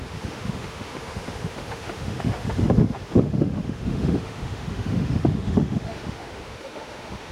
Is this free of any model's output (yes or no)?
no